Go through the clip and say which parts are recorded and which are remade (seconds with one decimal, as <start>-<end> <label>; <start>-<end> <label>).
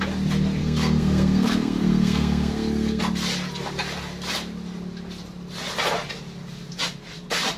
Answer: 0.0-0.6 recorded; 0.6-3.0 remade; 3.0-7.6 recorded